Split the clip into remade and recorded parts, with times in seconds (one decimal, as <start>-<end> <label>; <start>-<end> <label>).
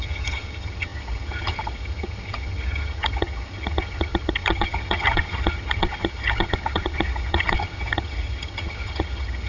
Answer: 0.0-9.5 remade